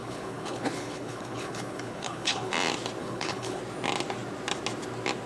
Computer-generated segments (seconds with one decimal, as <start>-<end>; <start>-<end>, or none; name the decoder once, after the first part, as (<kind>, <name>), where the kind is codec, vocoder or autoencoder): 0.0-2.5 (codec, HILCodec); 3.0-3.6